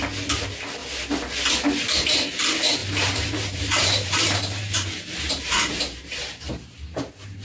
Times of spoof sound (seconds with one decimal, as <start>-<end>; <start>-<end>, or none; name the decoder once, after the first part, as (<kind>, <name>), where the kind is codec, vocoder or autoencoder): 2.8-6.5 (vocoder, BigVGAN v2)